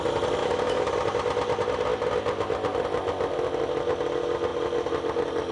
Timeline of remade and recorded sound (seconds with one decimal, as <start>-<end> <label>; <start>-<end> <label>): 0.0-0.4 recorded; 0.4-0.9 remade; 0.9-5.5 recorded